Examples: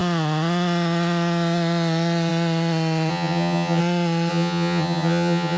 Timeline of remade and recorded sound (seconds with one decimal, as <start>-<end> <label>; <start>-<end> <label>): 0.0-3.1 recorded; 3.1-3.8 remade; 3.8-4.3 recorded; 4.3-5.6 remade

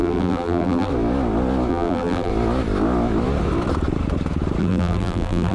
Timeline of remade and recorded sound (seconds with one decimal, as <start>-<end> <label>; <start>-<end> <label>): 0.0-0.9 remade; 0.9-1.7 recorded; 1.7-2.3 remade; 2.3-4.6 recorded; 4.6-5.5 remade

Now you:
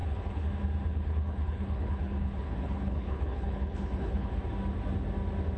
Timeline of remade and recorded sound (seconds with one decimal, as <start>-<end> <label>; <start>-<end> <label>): 0.0-0.5 remade; 0.5-0.9 recorded; 0.9-4.3 remade; 4.3-5.6 recorded

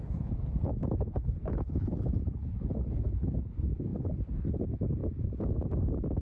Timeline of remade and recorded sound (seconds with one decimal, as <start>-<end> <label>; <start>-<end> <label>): 0.0-5.0 remade; 5.0-6.2 recorded

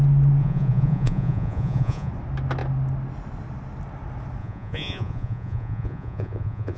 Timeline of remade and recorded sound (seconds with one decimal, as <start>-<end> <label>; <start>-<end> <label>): 0.0-0.4 recorded; 0.4-2.1 remade; 2.1-4.4 recorded; 4.4-6.8 remade

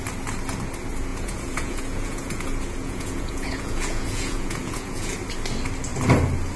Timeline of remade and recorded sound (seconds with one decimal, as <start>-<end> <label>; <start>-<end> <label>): 0.0-1.1 recorded; 1.1-5.1 remade; 5.1-6.6 recorded

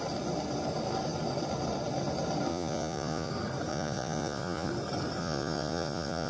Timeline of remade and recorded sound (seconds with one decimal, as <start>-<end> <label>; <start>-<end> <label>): 0.0-2.5 recorded; 2.5-3.3 remade; 3.3-3.7 recorded; 3.7-4.7 remade; 4.7-5.2 recorded; 5.2-6.3 remade